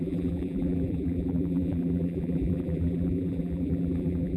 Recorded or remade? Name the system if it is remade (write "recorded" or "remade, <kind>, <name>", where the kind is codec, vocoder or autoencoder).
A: remade, vocoder, BigVGAN v2